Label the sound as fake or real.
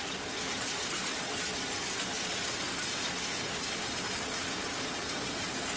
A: real